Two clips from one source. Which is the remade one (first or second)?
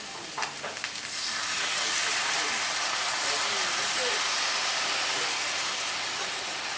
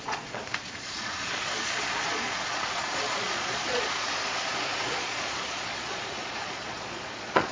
second